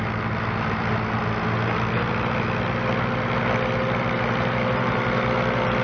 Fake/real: real